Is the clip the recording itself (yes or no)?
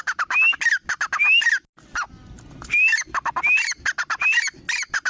yes